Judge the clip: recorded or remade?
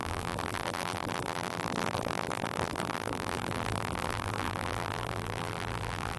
remade